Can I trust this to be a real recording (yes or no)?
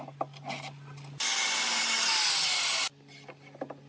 yes